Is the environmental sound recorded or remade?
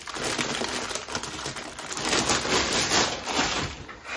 recorded